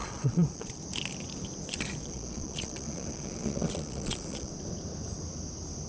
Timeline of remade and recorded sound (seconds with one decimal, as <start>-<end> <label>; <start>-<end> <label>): 0.0-0.8 remade; 0.8-2.0 recorded; 2.0-4.5 remade; 4.5-5.9 recorded